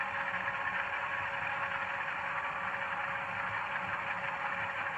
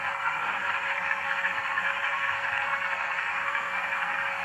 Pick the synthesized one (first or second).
second